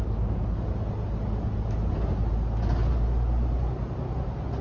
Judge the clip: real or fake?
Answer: real